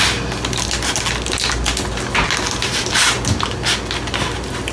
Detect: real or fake real